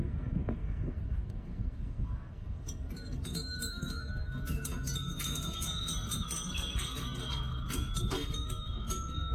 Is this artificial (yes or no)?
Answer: yes